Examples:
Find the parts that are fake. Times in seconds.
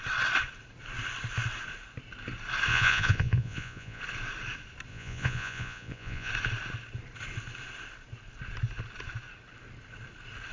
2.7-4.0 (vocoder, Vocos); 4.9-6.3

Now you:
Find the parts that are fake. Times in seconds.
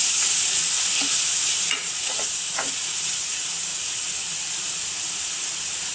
0.0-5.9 (vocoder, Vocos)